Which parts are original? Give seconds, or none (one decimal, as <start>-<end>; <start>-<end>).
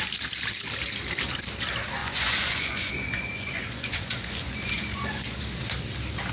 0.0-2.0; 5.4-6.3